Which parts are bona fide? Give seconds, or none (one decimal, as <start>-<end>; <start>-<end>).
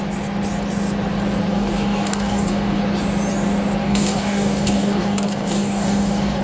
0.0-1.5; 2.8-3.8